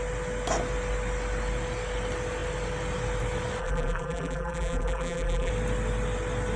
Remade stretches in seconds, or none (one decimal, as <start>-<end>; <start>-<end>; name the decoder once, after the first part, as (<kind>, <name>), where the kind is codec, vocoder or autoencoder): 3.6-5.5 (vocoder, BigVGAN v2)